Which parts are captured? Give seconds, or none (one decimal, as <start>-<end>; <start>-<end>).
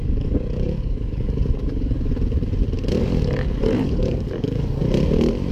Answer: 2.1-3.0; 4.8-5.5